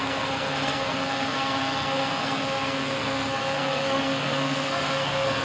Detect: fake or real fake